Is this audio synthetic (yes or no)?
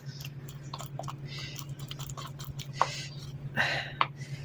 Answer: no